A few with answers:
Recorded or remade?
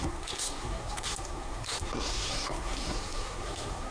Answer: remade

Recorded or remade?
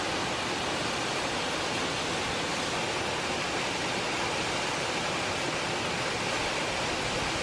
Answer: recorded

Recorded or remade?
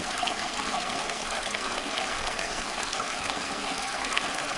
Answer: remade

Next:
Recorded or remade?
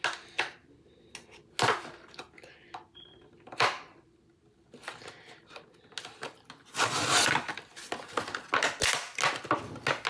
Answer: recorded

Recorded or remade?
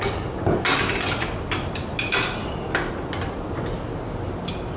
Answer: recorded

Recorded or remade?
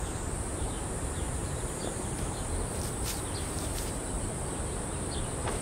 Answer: remade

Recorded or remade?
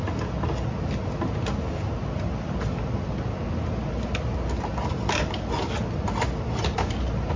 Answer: recorded